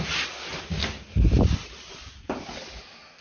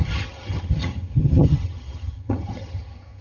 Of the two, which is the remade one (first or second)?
second